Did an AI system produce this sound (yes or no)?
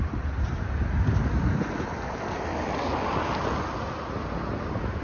no